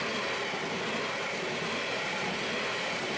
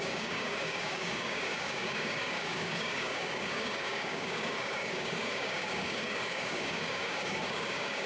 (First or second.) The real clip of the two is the first